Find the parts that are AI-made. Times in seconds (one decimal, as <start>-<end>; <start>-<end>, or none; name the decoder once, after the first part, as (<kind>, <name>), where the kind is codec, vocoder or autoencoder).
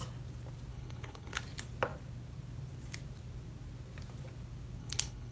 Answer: 0.7-1.4 (codec, HILCodec); 4.8-5.3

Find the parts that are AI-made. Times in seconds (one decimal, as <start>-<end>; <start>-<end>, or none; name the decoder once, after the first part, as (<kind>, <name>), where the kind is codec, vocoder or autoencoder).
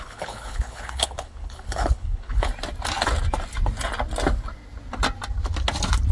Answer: 0.0-2.5 (codec, HILCodec)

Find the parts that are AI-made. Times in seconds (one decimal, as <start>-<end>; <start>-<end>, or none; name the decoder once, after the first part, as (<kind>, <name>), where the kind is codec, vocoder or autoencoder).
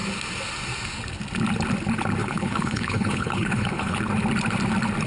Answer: 2.2-4.0 (codec, HILCodec)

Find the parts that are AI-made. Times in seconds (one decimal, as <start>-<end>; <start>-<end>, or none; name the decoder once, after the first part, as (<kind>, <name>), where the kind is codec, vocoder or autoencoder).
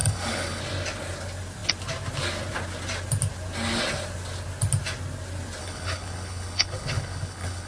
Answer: 0.0-0.6 (codec, HILCodec); 5.6-7.7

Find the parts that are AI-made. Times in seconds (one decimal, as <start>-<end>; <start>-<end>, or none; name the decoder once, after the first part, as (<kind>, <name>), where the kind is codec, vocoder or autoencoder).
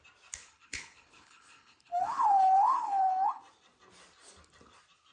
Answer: 0.4-3.4 (codec, HILCodec)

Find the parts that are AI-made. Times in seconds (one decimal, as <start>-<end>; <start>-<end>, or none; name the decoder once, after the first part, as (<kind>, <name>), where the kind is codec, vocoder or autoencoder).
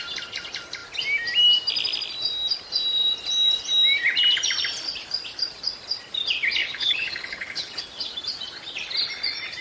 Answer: 6.6-7.8 (codec, HILCodec)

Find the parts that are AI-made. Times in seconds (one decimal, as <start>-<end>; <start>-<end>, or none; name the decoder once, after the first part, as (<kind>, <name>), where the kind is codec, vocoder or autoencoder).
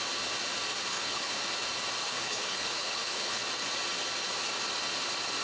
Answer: 0.9-1.4 (codec, HILCodec); 2.0-3.4